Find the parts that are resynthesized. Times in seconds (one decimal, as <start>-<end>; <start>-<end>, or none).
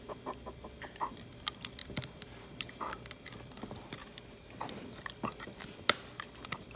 1.8-3.6